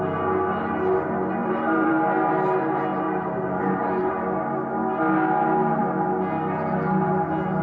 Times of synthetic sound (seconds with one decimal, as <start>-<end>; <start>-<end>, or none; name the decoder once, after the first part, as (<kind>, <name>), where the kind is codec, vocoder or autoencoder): 1.4-1.9 (vocoder, BigVGAN v2); 2.9-4.1